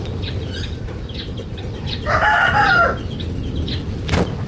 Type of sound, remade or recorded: recorded